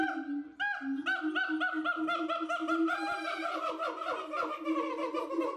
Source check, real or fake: real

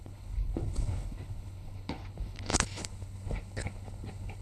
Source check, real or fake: fake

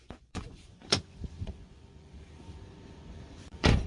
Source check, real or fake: fake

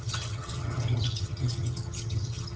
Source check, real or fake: fake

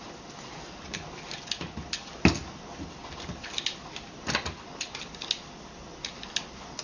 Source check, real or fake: real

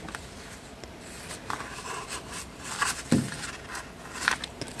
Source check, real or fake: real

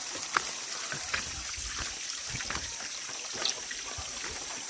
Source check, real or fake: real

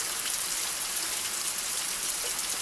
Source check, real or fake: real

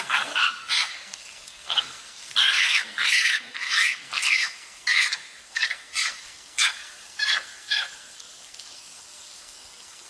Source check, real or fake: fake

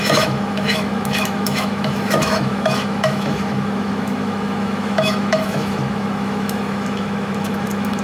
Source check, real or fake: fake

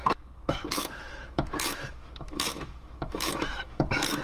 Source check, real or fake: fake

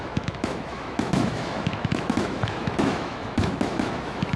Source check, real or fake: fake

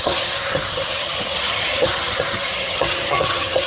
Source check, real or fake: fake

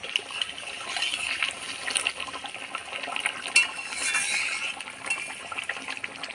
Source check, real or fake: real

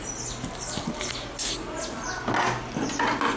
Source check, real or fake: real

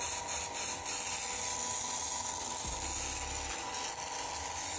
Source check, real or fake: real